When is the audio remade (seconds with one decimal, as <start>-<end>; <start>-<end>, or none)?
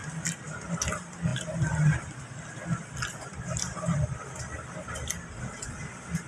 none